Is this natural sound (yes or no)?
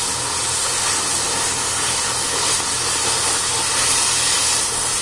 yes